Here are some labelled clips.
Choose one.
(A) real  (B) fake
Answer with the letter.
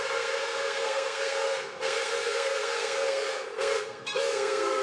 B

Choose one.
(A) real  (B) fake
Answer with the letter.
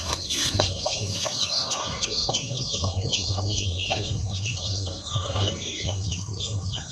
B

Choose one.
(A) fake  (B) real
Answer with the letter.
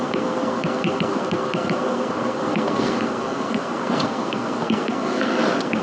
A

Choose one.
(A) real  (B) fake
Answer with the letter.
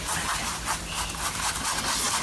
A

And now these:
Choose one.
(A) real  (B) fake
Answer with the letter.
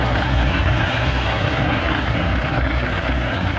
B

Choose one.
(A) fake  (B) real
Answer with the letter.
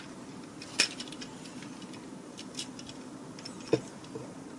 B